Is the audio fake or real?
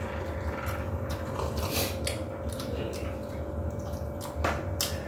real